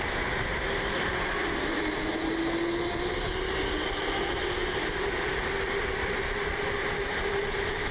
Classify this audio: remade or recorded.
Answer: recorded